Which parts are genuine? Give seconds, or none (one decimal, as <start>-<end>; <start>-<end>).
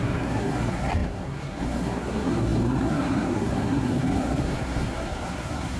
none